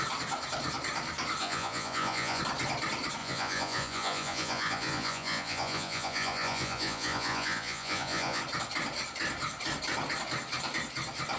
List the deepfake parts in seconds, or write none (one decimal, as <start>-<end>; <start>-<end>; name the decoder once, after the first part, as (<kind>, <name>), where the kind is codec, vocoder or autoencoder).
1.4-2.4 (vocoder, Vocos); 3.2-8.4